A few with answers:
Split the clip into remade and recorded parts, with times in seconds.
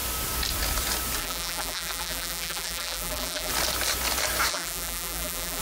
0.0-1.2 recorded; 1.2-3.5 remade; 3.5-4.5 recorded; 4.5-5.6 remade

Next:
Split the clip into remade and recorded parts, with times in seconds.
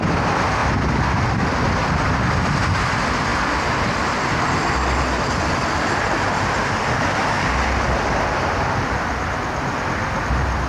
0.0-10.7 recorded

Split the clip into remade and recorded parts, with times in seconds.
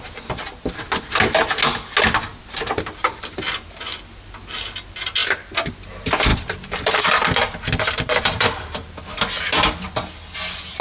0.0-2.3 recorded; 2.3-3.2 remade; 3.2-5.2 recorded; 5.2-5.7 remade; 5.7-6.3 recorded; 6.3-8.9 remade; 8.9-10.8 recorded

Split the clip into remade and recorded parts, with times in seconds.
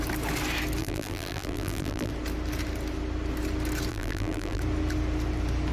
0.0-0.8 recorded; 0.8-2.1 remade; 2.1-3.9 recorded; 3.9-4.6 remade; 4.6-5.7 recorded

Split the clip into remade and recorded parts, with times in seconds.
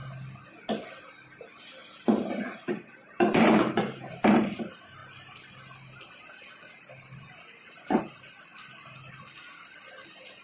0.0-1.0 recorded; 1.0-5.0 remade; 5.0-8.0 recorded; 8.0-8.5 remade; 8.5-9.9 recorded; 9.9-10.4 remade